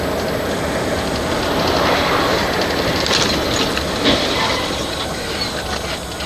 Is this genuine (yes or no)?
yes